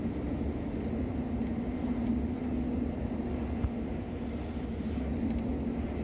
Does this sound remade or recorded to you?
recorded